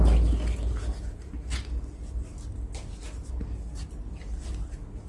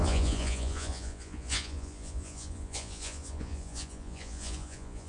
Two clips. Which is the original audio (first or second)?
first